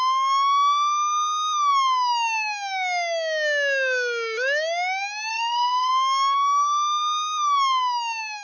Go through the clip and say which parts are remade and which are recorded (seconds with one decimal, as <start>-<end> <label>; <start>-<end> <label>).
0.0-5.3 recorded; 5.3-5.9 remade; 5.9-8.4 recorded